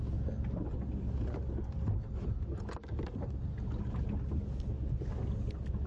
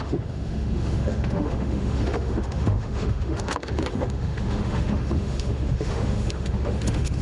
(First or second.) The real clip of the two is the first